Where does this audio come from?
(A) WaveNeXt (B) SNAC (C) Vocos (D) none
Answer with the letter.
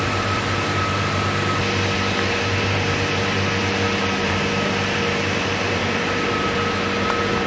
D